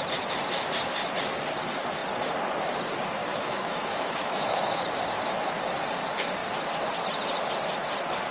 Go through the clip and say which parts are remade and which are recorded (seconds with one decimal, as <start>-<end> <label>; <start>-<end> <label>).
0.0-3.2 recorded; 3.2-4.8 remade; 4.8-8.3 recorded